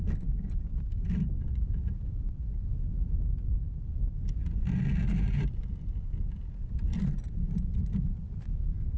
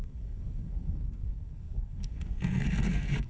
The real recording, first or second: first